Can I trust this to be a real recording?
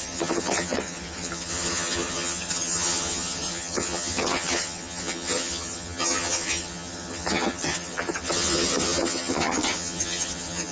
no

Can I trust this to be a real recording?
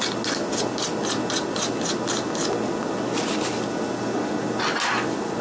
yes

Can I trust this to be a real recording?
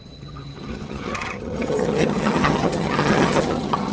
no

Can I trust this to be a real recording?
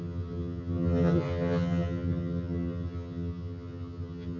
no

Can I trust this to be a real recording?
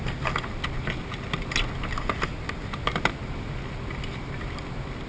yes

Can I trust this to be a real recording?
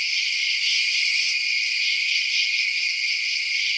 yes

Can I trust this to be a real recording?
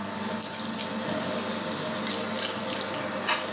yes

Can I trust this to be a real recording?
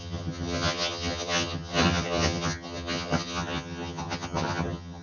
no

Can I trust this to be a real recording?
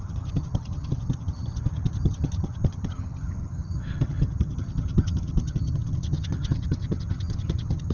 no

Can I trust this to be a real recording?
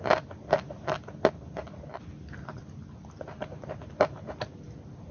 yes